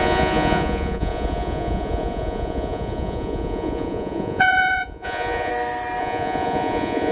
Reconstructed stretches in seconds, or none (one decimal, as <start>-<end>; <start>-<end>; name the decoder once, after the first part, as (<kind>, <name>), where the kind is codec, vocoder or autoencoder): 0.0-5.5 (vocoder, Vocos); 6.0-7.1